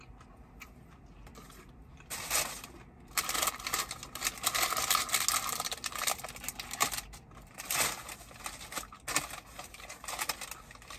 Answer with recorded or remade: recorded